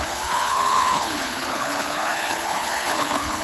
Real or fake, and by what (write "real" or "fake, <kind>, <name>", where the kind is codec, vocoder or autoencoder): fake, codec, HILCodec